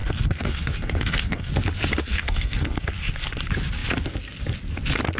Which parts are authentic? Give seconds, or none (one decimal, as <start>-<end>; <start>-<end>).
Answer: 1.5-2.0; 2.9-5.2